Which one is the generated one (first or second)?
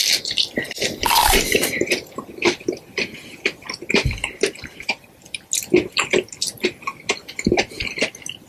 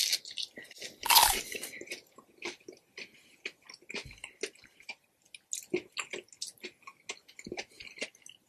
first